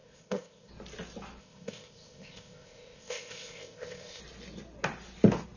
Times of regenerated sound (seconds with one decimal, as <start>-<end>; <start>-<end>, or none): 0.0-0.7; 1.4-4.2